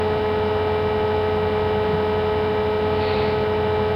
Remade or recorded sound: recorded